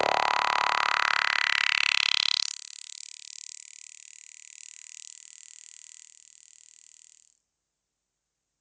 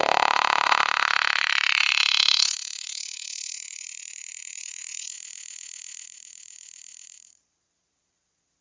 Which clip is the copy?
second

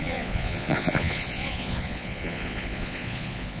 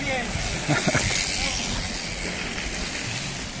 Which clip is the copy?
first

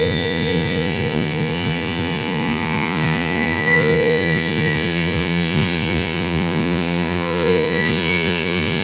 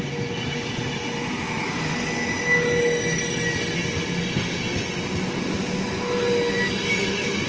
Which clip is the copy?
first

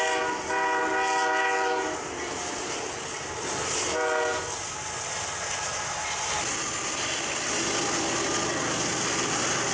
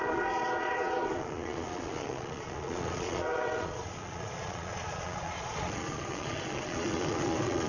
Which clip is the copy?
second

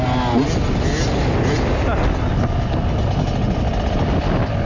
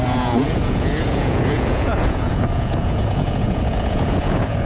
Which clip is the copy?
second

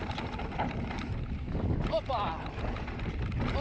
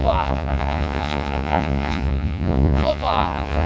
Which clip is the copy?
second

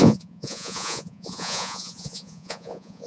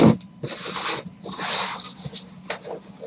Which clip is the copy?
first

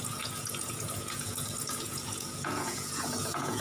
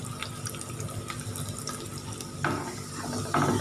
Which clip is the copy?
first